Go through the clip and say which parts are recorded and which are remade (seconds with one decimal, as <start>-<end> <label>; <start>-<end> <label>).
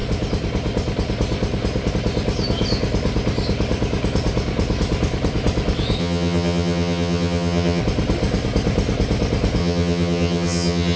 0.0-6.0 recorded; 6.0-7.8 remade; 7.8-9.6 recorded; 9.6-11.0 remade